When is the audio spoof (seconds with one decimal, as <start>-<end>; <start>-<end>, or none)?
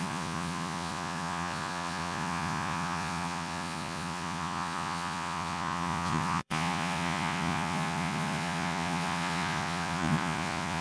0.0-10.8